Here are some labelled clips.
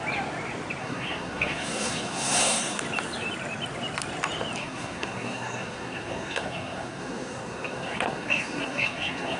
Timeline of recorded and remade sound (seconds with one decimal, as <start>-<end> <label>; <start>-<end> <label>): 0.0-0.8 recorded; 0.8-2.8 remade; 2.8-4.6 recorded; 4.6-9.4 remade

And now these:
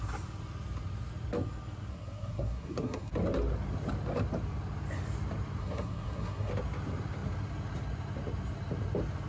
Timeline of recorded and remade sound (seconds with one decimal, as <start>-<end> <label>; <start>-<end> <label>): 0.0-1.9 recorded; 1.9-3.1 remade; 3.1-5.6 recorded; 5.6-6.5 remade; 6.5-9.3 recorded

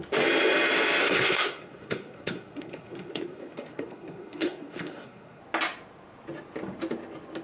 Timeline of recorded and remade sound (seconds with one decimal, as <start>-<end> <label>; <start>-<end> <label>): 0.0-1.0 recorded; 1.0-5.4 remade; 5.4-7.4 recorded

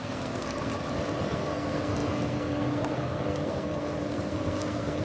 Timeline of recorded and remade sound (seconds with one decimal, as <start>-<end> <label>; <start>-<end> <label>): 0.0-0.7 remade; 0.7-1.2 recorded; 1.2-5.0 remade

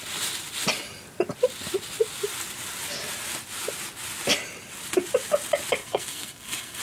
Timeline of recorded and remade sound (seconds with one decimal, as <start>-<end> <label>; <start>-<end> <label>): 0.0-5.8 recorded; 5.8-6.8 remade

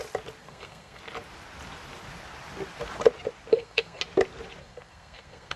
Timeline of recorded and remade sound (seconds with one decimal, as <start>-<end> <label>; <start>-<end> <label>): 0.0-0.4 recorded; 0.4-1.0 remade; 1.0-3.5 recorded; 3.5-4.0 remade; 4.0-4.6 recorded; 4.6-5.6 remade